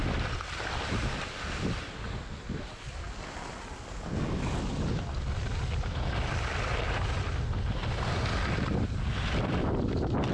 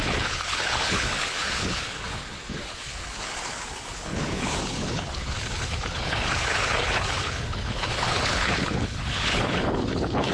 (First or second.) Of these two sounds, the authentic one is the first